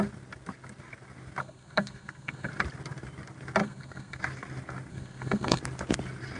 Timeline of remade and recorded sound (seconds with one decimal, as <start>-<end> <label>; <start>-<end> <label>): 0.0-1.4 recorded; 1.4-2.5 remade; 2.5-3.6 recorded; 3.6-4.2 remade; 4.2-4.9 recorded; 4.9-5.6 remade; 5.6-6.4 recorded